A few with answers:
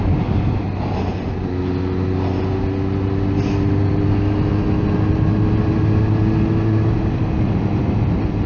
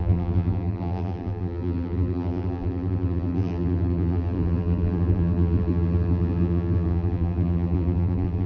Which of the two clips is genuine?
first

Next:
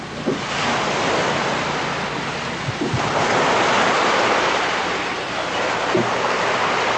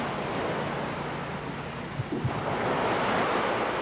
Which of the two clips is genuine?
second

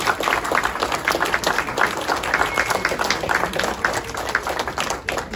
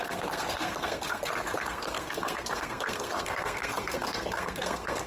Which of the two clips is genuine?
first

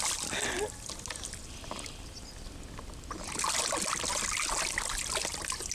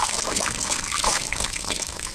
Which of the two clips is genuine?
first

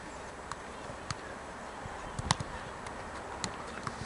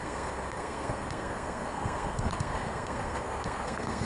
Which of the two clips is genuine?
first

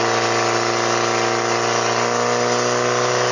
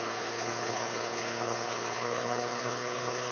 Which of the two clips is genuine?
first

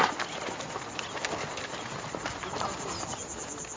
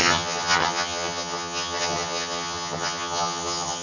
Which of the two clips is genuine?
first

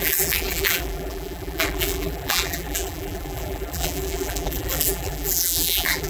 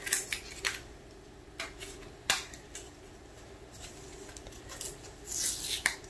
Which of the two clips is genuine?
second